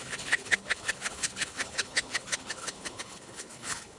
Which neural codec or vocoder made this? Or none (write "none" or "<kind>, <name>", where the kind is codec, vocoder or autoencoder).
codec, HILCodec